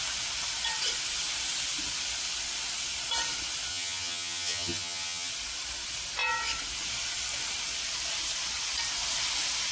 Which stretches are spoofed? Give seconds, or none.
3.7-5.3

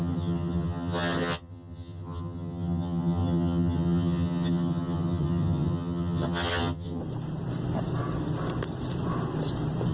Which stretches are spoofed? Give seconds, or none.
0.0-7.0

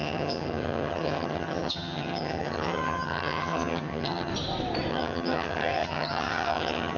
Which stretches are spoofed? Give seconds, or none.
0.0-4.3; 4.9-7.0

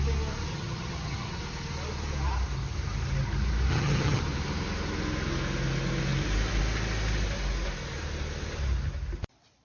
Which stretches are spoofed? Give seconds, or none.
0.5-1.4; 3.7-4.2

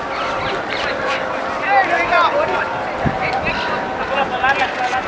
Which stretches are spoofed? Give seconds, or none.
none

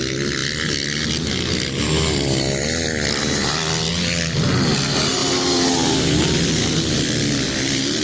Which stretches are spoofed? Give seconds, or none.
none

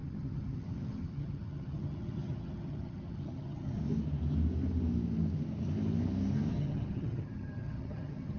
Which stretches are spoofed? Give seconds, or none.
0.0-3.8; 6.5-8.4

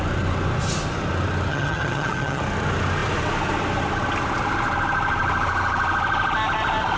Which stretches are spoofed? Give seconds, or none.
1.5-2.4